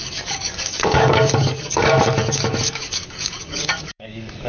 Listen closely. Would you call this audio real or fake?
fake